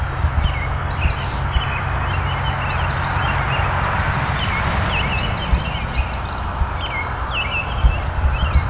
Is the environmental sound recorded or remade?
recorded